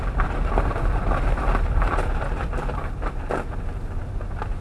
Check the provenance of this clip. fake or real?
real